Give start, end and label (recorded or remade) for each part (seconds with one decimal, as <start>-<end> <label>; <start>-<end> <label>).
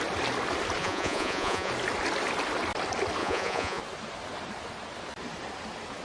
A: 0.0-0.8 recorded; 0.8-1.7 remade; 1.7-3.2 recorded; 3.2-3.8 remade; 3.8-6.0 recorded